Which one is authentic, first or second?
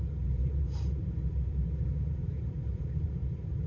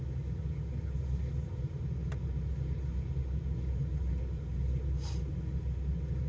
second